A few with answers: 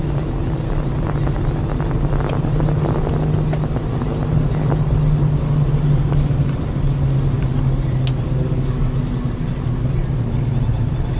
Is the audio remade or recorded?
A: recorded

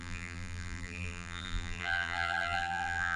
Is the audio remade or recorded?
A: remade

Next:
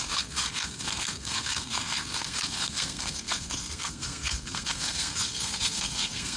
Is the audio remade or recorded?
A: remade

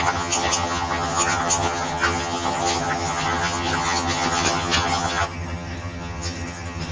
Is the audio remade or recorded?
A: remade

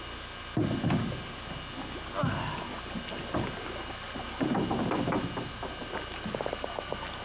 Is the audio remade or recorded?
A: recorded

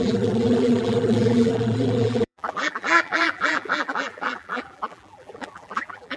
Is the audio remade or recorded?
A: remade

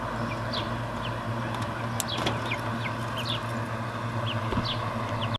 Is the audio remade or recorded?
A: recorded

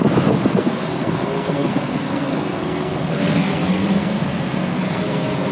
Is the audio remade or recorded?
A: remade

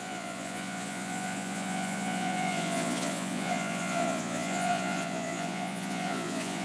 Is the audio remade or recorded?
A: remade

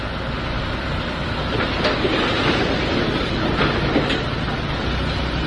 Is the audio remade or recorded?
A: remade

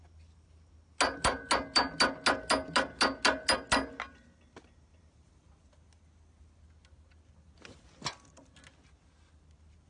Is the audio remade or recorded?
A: recorded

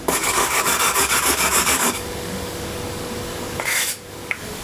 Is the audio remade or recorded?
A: remade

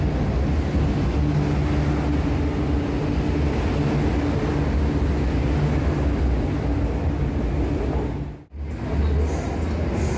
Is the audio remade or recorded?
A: recorded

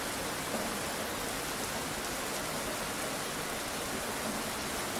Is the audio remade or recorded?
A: recorded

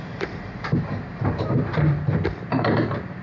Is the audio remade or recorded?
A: remade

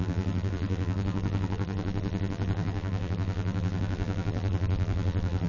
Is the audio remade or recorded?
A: remade